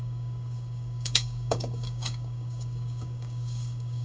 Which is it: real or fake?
fake